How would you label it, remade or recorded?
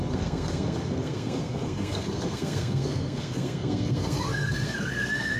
remade